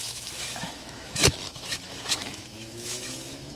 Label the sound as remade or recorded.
remade